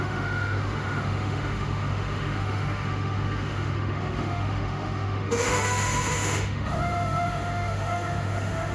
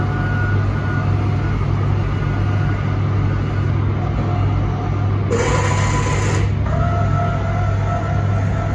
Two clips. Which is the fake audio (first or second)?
first